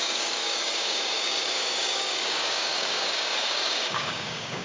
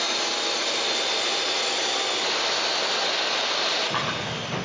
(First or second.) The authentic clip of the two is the second